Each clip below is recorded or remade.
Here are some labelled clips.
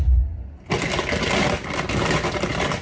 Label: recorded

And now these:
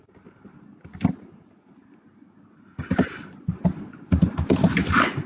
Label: recorded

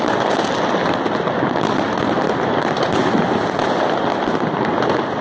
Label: recorded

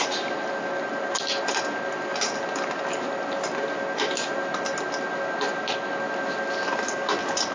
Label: recorded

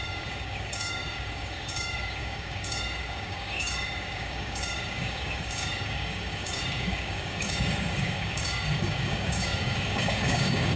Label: remade